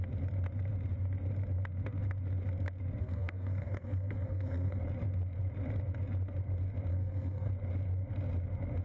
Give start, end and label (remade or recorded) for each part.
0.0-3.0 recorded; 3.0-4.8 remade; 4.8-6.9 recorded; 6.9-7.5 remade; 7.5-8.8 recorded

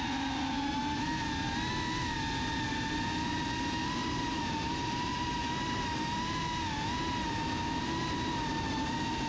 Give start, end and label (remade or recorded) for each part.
0.0-4.0 recorded; 4.0-5.5 remade; 5.5-9.3 recorded

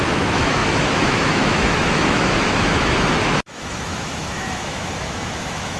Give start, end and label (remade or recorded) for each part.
0.0-5.8 remade

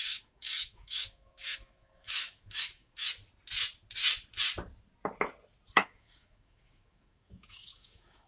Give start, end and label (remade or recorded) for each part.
0.0-3.0 remade; 3.0-5.7 recorded; 5.7-8.3 remade

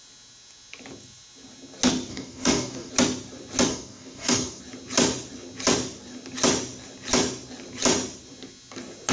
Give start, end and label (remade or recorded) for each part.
0.0-2.1 recorded; 2.1-2.9 remade; 2.9-3.7 recorded; 3.7-4.6 remade; 4.6-9.1 recorded

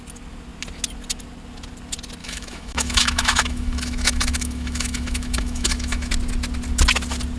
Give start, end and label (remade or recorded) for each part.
0.0-2.2 recorded; 2.2-6.1 remade; 6.1-7.4 recorded

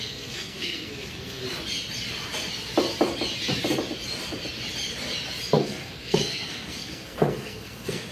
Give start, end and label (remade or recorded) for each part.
0.0-1.4 remade; 1.4-5.5 recorded; 5.5-8.1 remade